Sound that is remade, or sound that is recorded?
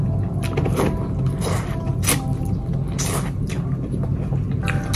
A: recorded